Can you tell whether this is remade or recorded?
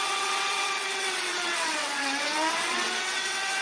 remade